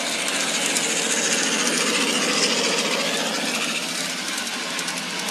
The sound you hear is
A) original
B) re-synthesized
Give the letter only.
A